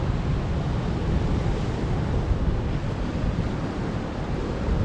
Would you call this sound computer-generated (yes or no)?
no